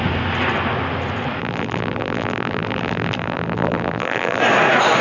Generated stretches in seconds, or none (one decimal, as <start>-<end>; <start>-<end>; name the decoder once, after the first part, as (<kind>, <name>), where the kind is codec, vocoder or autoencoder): 1.4-4.4 (vocoder, BigVGAN v2)